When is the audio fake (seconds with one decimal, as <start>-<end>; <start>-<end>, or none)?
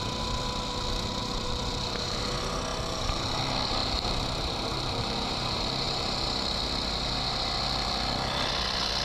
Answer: 1.2-2.2; 2.7-3.4; 3.8-6.1